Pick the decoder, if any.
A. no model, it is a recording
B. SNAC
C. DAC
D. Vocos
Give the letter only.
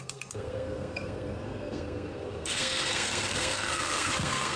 B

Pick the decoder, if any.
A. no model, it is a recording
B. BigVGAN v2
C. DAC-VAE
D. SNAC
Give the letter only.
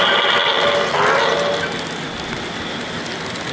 A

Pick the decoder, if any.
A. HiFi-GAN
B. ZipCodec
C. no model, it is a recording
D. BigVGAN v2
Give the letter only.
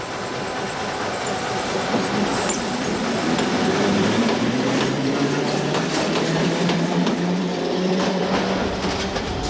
D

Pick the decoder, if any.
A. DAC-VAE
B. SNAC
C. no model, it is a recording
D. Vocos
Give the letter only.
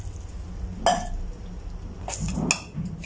C